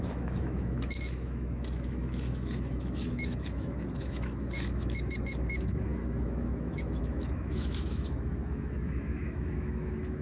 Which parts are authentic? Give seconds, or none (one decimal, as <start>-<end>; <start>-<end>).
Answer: none